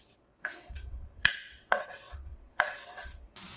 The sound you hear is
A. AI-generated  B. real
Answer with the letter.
A